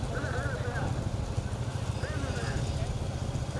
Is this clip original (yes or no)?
yes